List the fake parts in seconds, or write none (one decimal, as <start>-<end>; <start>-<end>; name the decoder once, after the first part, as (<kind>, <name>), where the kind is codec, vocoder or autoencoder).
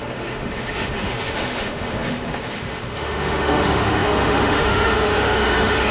0.0-5.9 (autoencoder, DAC-VAE)